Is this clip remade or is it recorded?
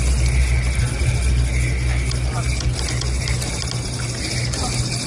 recorded